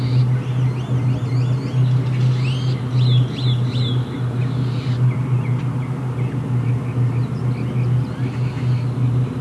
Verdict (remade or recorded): recorded